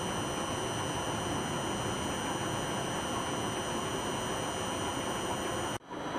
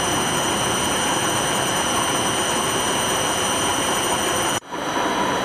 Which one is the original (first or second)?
first